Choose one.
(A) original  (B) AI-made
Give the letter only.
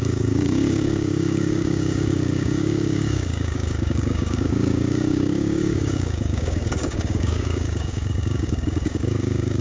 B